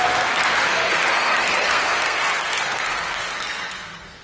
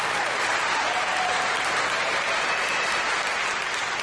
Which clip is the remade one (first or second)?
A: first